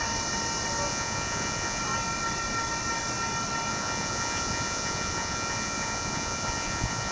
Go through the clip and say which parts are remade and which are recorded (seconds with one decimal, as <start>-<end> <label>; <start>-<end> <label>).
0.0-0.9 recorded; 0.9-1.8 remade; 1.8-3.7 recorded; 3.7-7.1 remade